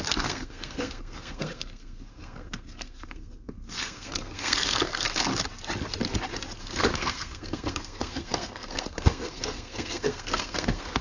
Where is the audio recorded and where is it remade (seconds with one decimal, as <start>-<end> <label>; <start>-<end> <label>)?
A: 0.0-5.3 remade; 5.3-6.6 recorded; 6.6-11.0 remade